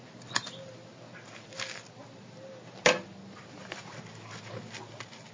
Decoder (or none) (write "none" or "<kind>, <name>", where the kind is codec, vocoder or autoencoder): none